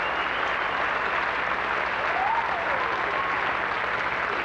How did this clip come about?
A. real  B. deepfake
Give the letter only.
A